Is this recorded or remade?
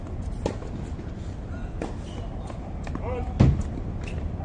recorded